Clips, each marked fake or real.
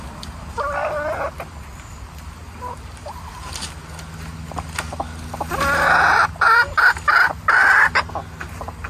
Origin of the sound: real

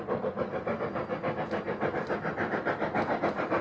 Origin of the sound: real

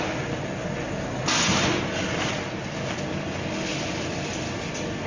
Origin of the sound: real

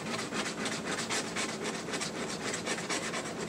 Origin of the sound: fake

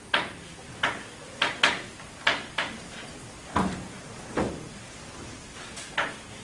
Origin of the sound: real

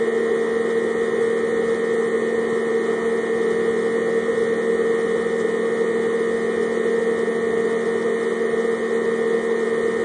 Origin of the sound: real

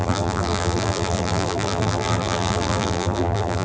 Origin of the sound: fake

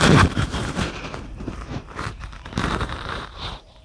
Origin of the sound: fake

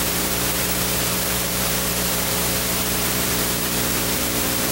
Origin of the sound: fake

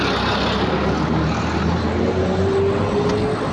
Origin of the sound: real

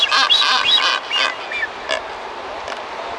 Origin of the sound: real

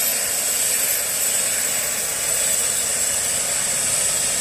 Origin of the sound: real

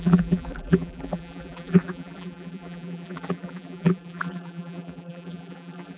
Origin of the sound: fake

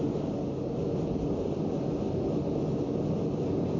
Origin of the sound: real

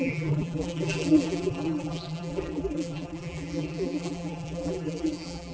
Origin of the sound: fake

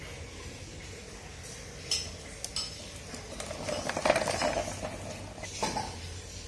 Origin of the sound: real